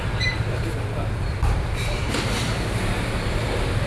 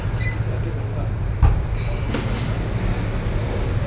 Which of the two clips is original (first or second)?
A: second